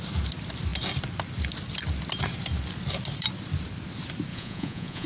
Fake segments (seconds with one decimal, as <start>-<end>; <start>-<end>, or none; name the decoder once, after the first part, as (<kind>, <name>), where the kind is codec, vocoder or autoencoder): 4.3-5.1 (vocoder, Vocos)

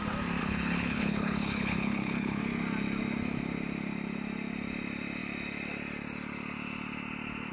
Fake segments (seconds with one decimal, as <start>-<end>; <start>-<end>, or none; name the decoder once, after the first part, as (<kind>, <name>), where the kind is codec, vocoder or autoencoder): 0.4-2.4 (codec, HILCodec)